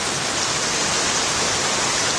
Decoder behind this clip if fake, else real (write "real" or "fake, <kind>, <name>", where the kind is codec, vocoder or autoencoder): real